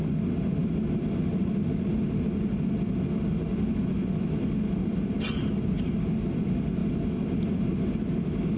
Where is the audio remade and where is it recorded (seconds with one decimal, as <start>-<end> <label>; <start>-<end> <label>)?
0.0-8.6 recorded